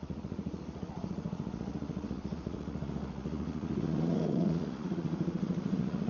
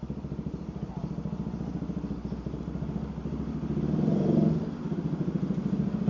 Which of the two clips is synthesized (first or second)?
first